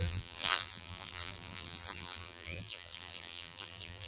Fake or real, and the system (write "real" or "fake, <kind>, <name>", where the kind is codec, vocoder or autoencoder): fake, vocoder, BigVGAN v2